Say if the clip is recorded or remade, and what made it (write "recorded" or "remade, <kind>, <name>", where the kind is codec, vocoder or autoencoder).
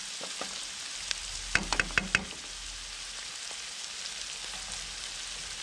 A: recorded